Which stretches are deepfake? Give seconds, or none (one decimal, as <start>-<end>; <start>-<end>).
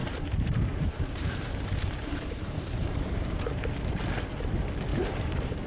0.0-3.4; 4.9-5.7